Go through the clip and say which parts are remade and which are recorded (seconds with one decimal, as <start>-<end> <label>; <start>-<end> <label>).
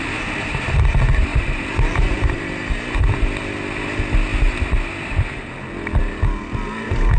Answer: 0.0-1.3 recorded; 1.3-2.4 remade; 2.4-7.2 recorded